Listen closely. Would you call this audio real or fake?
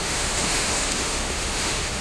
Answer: fake